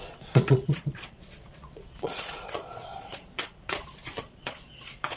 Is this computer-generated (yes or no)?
yes